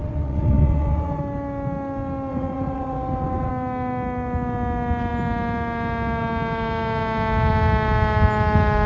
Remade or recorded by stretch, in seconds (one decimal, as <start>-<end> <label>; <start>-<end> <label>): 0.0-1.2 remade; 1.2-2.3 recorded; 2.3-3.5 remade; 3.5-8.9 recorded